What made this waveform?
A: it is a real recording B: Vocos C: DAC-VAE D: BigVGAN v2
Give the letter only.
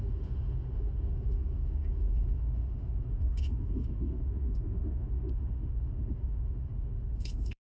C